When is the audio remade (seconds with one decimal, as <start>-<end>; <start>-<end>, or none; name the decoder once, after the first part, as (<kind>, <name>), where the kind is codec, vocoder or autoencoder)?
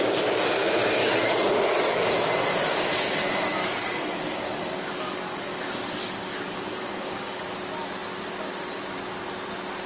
1.0-2.0 (codec, DAC); 3.6-7.4